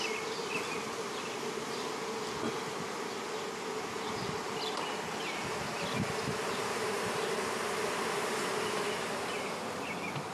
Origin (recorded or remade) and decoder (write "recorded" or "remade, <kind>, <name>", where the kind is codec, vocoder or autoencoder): recorded